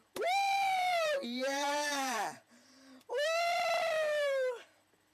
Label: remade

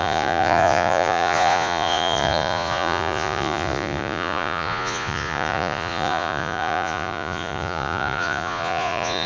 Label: remade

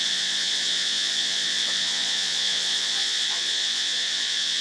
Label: remade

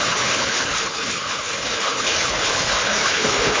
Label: remade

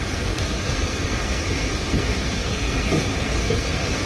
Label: remade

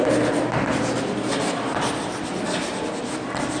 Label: remade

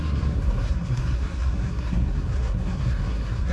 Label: remade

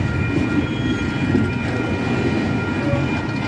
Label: recorded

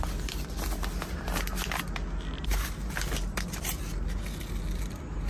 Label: recorded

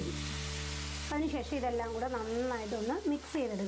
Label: recorded